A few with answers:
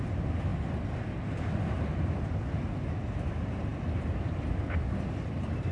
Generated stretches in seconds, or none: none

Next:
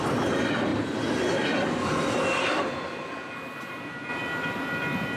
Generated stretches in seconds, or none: none

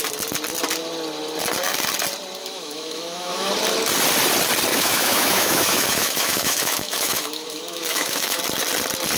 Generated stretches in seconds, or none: 2.4-3.5; 4.7-8.4

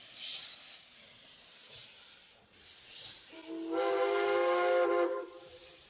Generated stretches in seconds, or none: 1.4-3.4; 5.5-5.9

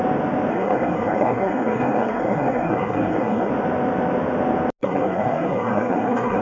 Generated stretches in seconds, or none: 0.5-3.5; 4.8-6.4

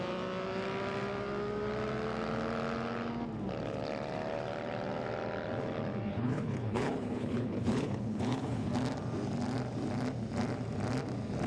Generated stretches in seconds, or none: 6.1-8.7